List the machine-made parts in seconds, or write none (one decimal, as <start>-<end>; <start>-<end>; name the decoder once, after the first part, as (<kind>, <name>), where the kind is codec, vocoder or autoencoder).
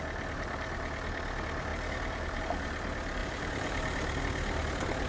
1.7-2.4 (vocoder, BigVGAN v2); 3.2-4.2